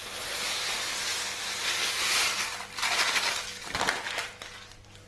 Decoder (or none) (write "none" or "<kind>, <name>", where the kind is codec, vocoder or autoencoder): none